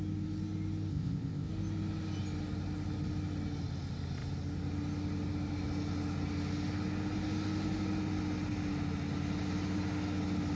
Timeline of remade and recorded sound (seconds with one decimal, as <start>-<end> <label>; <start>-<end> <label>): 0.0-0.9 recorded; 0.9-1.5 remade; 1.5-10.6 recorded

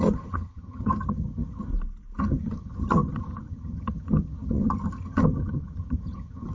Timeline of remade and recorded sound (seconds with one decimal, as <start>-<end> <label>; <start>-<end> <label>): 0.0-1.7 remade; 1.7-2.2 recorded; 2.2-6.5 remade